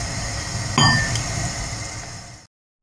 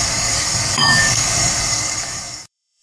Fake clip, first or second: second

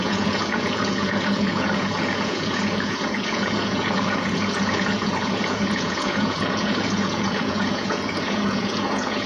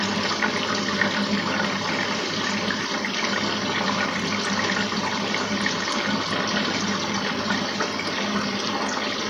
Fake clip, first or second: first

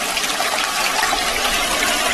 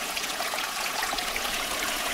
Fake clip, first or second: second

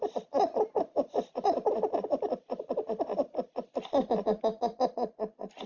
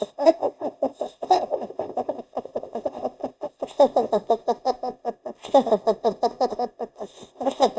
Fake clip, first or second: second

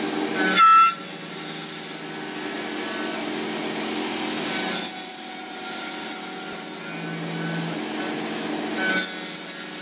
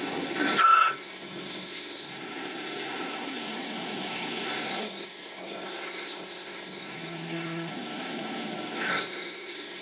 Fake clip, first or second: second